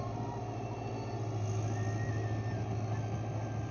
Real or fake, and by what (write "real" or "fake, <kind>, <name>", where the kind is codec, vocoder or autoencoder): real